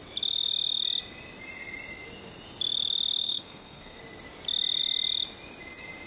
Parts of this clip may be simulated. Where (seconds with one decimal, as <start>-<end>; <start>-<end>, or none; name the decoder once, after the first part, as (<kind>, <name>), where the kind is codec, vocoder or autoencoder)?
3.2-4.0 (codec, SNAC)